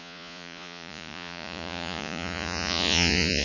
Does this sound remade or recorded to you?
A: remade